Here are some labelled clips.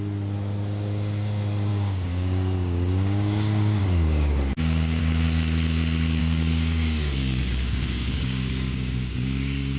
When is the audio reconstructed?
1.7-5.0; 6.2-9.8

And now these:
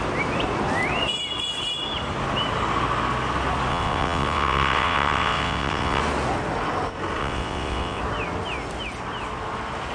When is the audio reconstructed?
3.7-6.0; 7.2-8.0

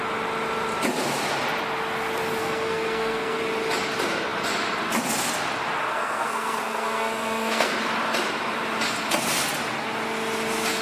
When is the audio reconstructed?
2.4-3.4; 5.9-7.7